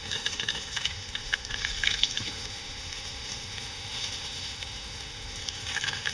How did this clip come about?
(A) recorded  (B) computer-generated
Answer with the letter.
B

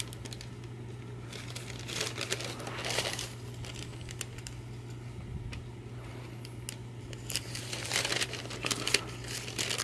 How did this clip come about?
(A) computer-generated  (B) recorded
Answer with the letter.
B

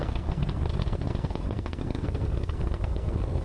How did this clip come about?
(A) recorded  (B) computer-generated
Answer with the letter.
B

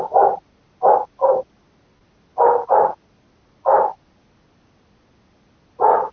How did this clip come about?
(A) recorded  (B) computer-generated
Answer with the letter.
A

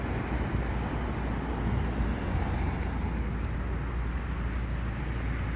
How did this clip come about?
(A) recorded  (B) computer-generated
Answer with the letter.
A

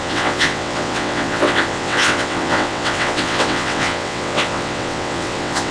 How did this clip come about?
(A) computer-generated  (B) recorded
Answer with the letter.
A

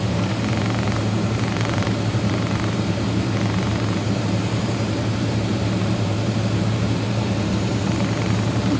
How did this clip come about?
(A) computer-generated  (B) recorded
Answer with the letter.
A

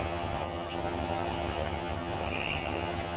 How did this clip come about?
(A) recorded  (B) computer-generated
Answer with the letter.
B